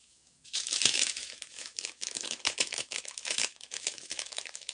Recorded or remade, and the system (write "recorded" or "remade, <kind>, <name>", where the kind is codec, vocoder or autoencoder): remade, autoencoder, DAC-VAE